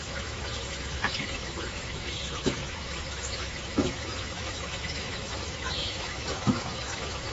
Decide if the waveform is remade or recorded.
remade